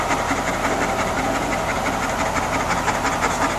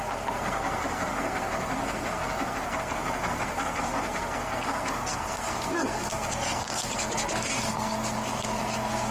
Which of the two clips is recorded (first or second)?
first